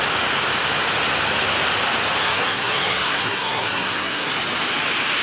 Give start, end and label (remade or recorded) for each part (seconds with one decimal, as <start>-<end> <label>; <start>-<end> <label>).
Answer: 0.0-2.2 recorded; 2.2-4.3 remade; 4.3-5.2 recorded